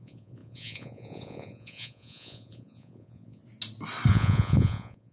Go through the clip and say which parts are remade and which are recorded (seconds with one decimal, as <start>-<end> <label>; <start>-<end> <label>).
0.0-3.4 remade; 3.4-4.1 recorded; 4.1-5.1 remade